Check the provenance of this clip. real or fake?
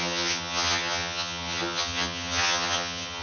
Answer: fake